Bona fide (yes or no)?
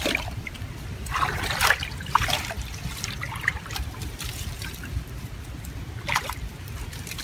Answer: no